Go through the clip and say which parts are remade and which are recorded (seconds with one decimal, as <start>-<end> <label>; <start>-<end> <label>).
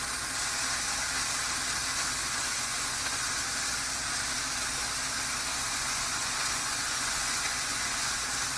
0.0-2.2 recorded; 2.2-3.4 remade; 3.4-5.5 recorded; 5.5-8.2 remade; 8.2-8.6 recorded